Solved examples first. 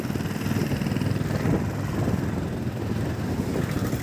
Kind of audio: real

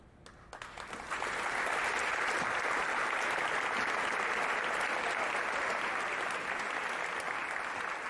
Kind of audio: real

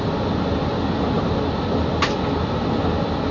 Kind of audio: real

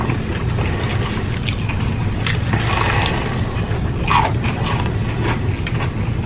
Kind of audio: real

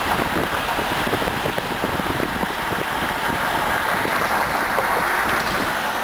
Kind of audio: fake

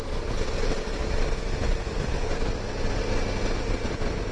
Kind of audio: real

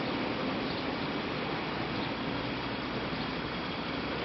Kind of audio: fake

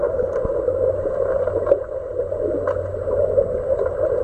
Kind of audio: real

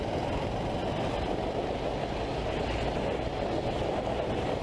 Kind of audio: real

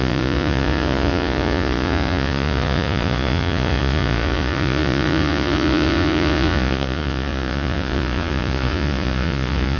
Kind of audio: fake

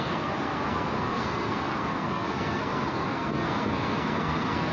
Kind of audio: fake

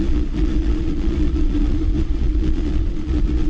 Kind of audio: fake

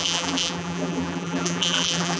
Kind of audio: fake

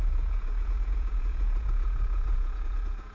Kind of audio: fake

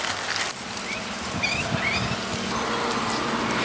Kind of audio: real